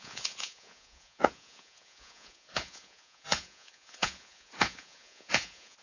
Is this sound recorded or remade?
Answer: remade